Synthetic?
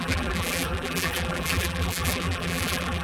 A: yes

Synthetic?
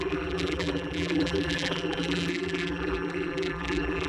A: yes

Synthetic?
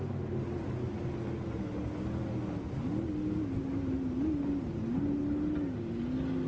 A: no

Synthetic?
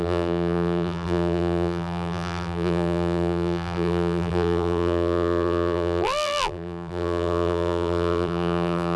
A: yes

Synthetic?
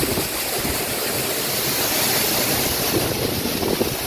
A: no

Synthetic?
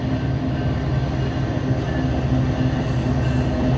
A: no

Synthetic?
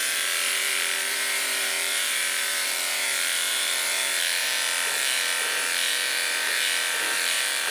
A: yes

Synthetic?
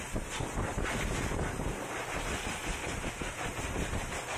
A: yes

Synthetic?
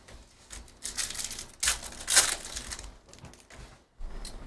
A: no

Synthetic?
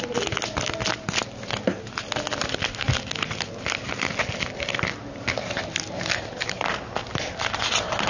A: no